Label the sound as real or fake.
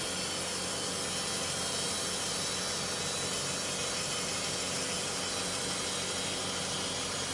real